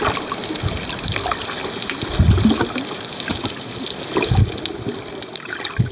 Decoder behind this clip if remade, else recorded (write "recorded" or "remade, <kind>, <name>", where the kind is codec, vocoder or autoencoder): recorded